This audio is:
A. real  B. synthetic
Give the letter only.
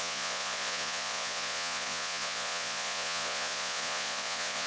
B